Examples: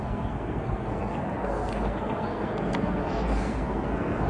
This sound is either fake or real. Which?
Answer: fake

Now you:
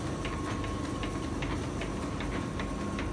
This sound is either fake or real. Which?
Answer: real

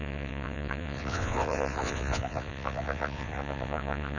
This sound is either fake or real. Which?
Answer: fake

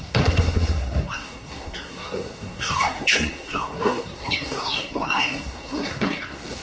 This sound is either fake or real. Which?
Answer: fake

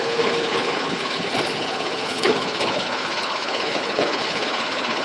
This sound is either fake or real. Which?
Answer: fake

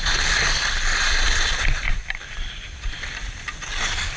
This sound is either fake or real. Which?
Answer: real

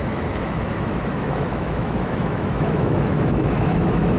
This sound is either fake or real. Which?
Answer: fake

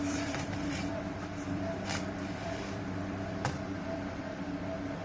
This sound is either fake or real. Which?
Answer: fake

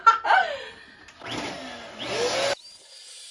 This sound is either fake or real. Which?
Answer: real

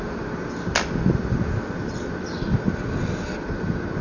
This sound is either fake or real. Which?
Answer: real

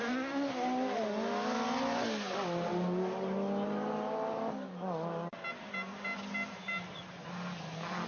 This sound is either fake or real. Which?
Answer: real